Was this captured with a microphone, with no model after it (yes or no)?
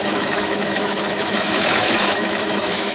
no